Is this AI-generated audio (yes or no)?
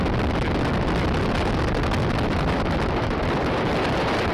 no